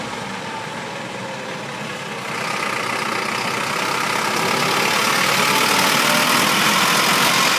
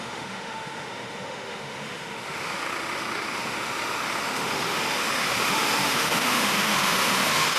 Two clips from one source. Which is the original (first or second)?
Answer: first